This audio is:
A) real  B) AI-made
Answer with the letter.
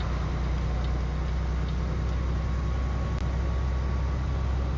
A